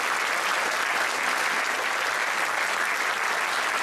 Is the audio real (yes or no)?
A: yes